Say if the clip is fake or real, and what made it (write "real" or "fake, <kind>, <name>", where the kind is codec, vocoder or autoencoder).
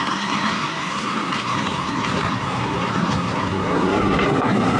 fake, codec, SNAC